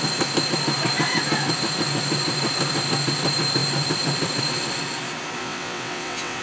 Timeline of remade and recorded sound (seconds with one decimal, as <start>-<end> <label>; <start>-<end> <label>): 0.0-5.4 recorded; 5.4-6.4 remade